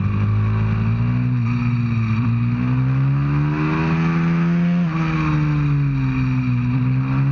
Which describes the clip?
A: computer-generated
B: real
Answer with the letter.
B